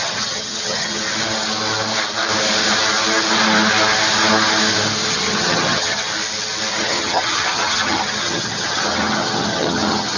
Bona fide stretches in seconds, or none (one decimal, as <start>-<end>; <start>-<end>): 1.0-5.1; 6.1-6.8